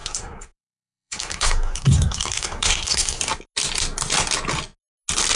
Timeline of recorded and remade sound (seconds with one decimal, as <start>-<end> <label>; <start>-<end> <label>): 0.0-3.2 remade; 3.2-5.4 recorded